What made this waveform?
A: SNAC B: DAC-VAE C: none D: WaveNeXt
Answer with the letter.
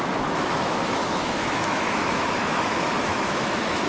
B